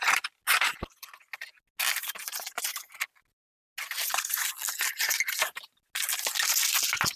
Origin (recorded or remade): recorded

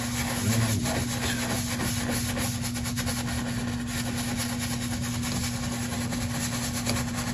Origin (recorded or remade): recorded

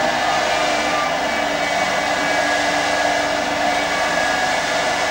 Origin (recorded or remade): recorded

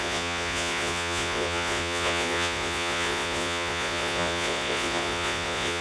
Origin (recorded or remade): remade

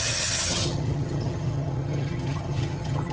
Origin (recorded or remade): remade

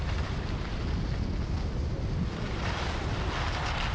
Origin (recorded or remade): recorded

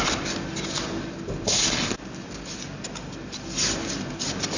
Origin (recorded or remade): recorded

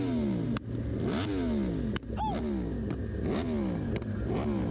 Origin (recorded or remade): recorded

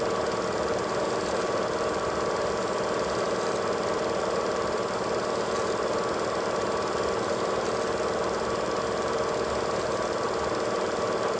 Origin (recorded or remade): recorded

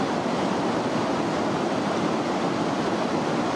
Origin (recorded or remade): recorded